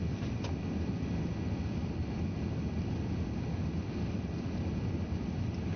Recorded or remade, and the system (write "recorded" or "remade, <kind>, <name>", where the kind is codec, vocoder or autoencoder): recorded